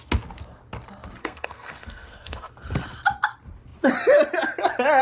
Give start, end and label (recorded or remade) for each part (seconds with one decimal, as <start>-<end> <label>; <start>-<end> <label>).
0.0-1.2 recorded; 1.2-2.5 remade; 2.5-5.0 recorded